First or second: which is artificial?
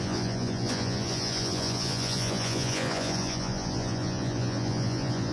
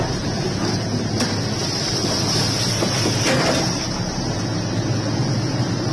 first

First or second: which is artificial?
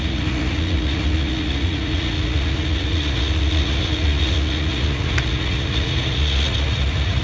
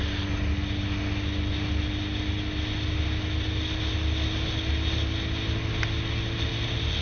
first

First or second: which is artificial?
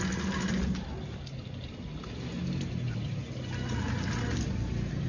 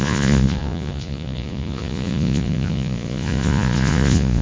second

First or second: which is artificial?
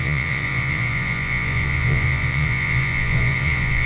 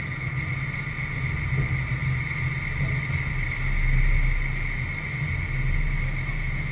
first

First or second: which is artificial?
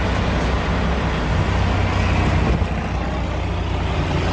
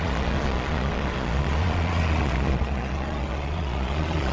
second